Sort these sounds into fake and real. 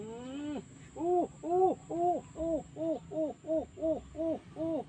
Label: real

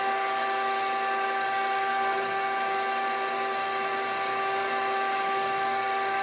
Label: fake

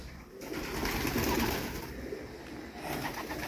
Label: real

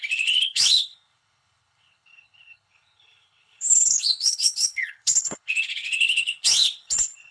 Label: fake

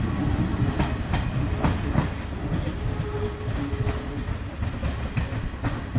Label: real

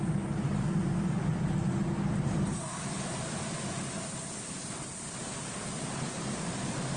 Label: real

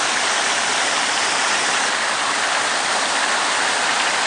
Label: real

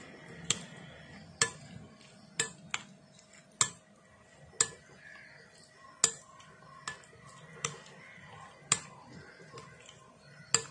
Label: real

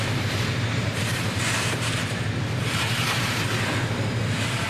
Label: fake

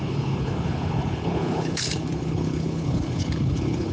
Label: fake